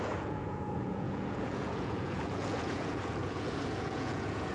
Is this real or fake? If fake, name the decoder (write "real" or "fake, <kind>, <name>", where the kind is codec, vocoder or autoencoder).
fake, vocoder, Vocos